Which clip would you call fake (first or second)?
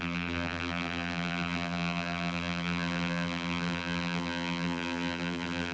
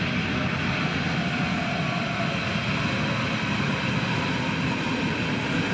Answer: first